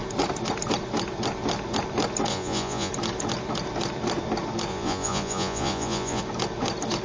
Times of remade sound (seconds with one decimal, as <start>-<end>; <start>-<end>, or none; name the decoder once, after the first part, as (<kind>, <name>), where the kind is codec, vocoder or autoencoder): 2.3-2.9 (vocoder, Vocos); 4.7-6.2